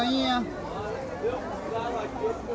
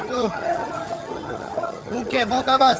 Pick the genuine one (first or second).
first